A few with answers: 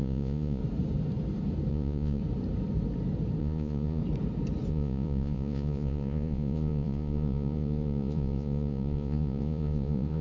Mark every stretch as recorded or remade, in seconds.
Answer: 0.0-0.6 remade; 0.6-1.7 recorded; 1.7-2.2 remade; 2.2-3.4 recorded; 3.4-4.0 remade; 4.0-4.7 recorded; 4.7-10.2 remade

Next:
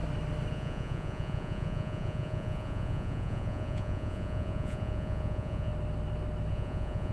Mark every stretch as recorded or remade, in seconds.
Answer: 0.0-0.5 recorded; 0.5-5.7 remade; 5.7-6.5 recorded; 6.5-7.1 remade

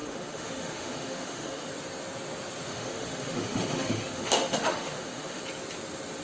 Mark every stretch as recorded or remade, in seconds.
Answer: 0.0-1.7 remade; 1.7-2.7 recorded; 2.7-5.4 remade; 5.4-6.2 recorded

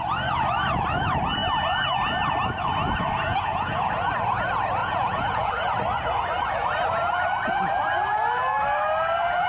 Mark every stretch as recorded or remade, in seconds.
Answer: 0.0-3.3 recorded; 3.3-3.9 remade; 3.9-4.8 recorded; 4.8-5.5 remade; 5.5-9.5 recorded